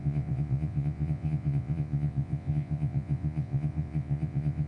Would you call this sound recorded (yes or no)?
no